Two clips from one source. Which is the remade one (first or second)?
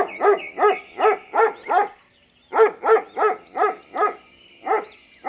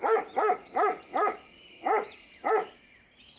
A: second